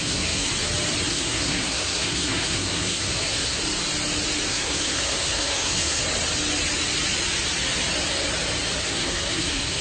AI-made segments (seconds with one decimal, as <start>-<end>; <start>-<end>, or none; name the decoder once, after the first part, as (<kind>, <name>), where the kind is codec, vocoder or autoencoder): 0.0-0.5 (codec, SNAC); 1.1-3.6; 4.5-6.0; 8.8-9.8